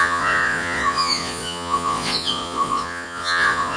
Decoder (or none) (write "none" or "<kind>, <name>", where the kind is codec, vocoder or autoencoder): vocoder, Vocos